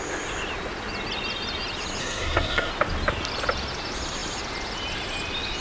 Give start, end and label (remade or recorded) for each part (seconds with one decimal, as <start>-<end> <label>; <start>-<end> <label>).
0.0-2.0 recorded; 2.0-2.7 remade; 2.7-5.6 recorded